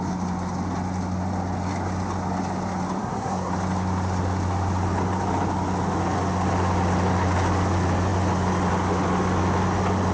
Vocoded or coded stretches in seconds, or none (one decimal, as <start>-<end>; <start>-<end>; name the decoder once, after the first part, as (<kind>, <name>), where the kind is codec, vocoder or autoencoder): 3.0-3.5 (codec, SNAC)